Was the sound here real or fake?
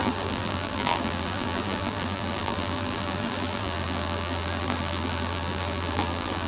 fake